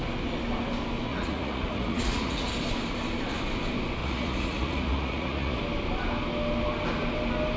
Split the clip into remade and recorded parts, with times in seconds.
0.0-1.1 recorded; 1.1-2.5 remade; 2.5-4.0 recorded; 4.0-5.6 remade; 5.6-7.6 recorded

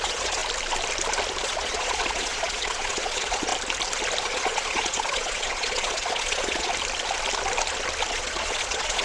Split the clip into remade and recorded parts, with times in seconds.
0.0-0.4 remade; 0.4-1.4 recorded; 1.4-3.5 remade; 3.5-4.2 recorded; 4.2-6.7 remade; 6.7-8.1 recorded; 8.1-9.0 remade

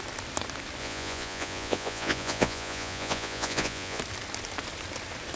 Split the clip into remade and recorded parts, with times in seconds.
0.0-0.8 recorded; 0.8-4.0 remade; 4.0-5.4 recorded

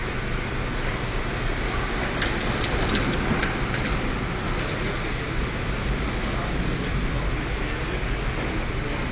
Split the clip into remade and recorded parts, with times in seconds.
0.0-9.1 recorded